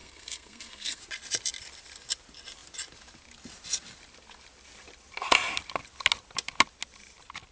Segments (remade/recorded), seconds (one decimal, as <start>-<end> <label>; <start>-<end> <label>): 0.0-1.0 remade; 1.0-7.5 recorded